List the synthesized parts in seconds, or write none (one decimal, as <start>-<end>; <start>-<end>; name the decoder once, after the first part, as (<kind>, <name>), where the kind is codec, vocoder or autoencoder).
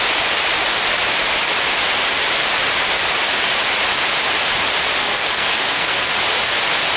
5.0-6.1 (codec, SNAC)